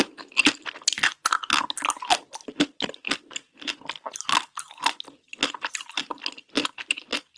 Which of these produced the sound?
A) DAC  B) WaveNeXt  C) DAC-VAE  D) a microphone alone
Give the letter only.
D